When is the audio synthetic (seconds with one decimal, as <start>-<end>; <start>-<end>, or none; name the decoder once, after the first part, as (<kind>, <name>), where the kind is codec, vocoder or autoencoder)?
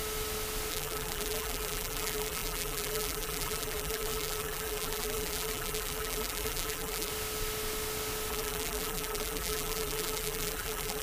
0.7-7.1 (vocoder, BigVGAN v2); 8.3-11.0